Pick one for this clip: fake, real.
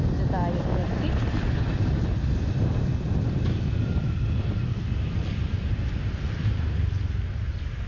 real